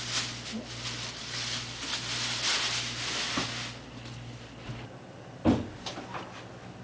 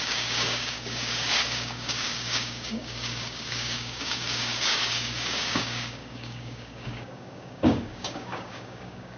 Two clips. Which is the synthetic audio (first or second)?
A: second